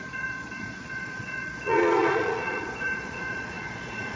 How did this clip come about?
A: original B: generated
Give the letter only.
B